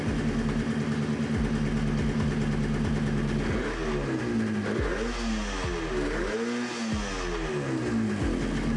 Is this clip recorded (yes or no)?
yes